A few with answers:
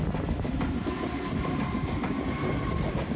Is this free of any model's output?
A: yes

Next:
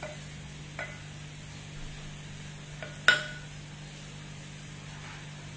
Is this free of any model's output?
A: yes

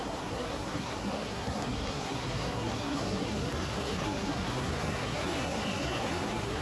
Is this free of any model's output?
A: no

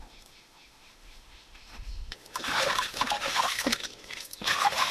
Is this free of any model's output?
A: no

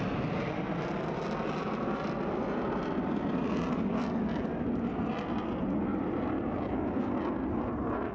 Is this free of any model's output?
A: yes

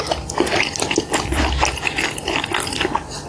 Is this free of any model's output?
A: no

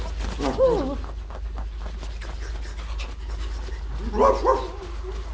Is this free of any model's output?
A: yes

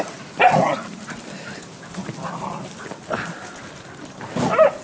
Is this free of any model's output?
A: yes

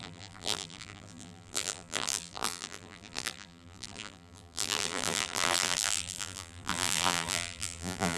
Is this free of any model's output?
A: no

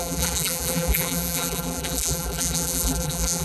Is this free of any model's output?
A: no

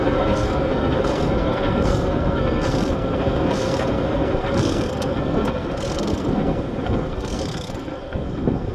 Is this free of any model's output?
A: no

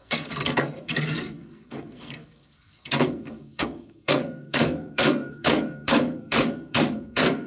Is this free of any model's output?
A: no